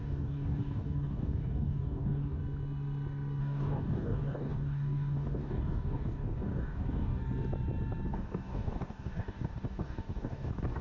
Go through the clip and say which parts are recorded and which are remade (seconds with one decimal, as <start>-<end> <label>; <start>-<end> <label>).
0.0-2.4 remade; 2.4-3.4 recorded; 3.4-7.2 remade; 7.2-8.1 recorded; 8.1-10.8 remade